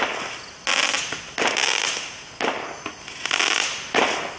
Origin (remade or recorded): recorded